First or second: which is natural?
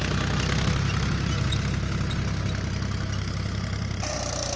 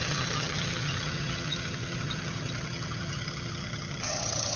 first